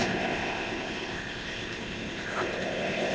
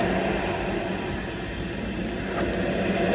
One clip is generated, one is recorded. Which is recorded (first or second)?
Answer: second